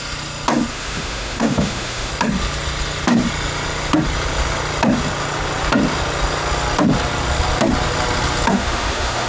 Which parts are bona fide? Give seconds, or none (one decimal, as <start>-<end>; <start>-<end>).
0.0-0.7; 2.1-8.5